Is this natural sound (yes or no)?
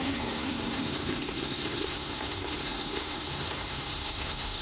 no